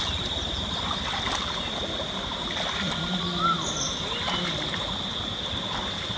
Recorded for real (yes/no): yes